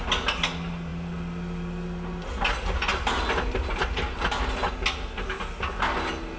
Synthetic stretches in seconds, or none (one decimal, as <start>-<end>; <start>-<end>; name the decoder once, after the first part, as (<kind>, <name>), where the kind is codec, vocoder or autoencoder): none

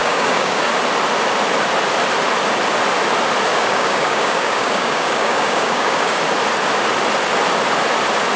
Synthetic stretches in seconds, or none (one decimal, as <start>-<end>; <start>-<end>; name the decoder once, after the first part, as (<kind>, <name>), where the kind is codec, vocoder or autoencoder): 0.0-0.7 (codec, DAC); 3.5-6.2

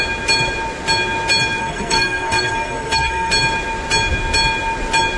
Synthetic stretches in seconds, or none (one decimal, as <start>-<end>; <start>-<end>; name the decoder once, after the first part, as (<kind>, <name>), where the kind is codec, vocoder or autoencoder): 1.6-3.3 (codec, SNAC)